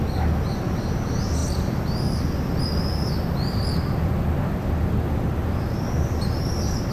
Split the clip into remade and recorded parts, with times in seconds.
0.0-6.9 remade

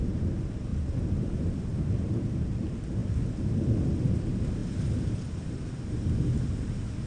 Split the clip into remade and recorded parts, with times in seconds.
0.0-0.7 recorded; 0.7-2.1 remade; 2.1-3.0 recorded; 3.0-4.0 remade; 4.0-7.1 recorded

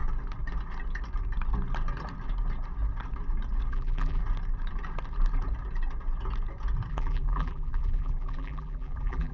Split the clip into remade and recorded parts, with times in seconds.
0.0-3.7 recorded; 3.7-4.2 remade; 4.2-6.9 recorded; 6.9-9.3 remade

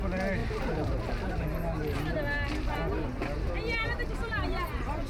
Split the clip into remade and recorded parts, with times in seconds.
0.0-5.1 recorded

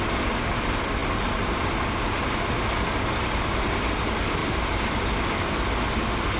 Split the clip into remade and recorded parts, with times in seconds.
0.0-1.0 recorded; 1.0-1.8 remade; 1.8-4.4 recorded; 4.4-4.9 remade; 4.9-6.4 recorded

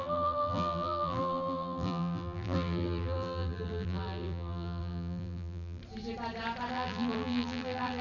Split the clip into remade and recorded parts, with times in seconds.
0.0-5.8 remade; 5.8-6.7 recorded; 6.7-8.0 remade

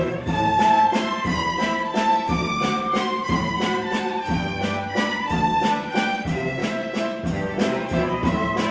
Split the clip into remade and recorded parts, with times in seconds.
0.0-1.6 remade; 1.6-5.9 recorded; 5.9-6.6 remade; 6.6-8.7 recorded

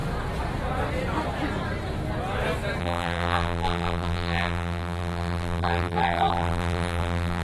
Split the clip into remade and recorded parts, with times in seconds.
0.0-2.8 recorded; 2.8-7.4 remade